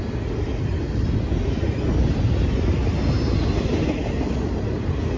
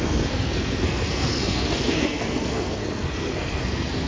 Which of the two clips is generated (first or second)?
second